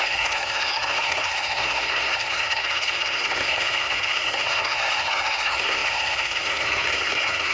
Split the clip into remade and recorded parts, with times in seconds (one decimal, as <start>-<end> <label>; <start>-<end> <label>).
0.0-7.5 remade